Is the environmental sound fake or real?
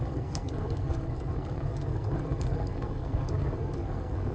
fake